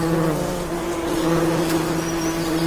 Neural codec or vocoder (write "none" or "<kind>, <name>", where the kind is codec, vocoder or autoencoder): none